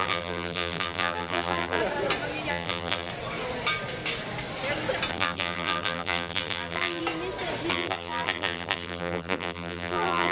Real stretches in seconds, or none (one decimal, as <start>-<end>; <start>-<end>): 1.8-2.5; 3.1-5.1; 7.0-7.7